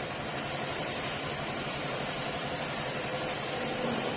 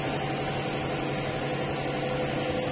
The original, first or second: second